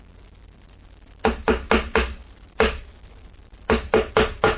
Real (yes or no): yes